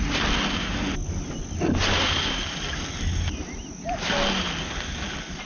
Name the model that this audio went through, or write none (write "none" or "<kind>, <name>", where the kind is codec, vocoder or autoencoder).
none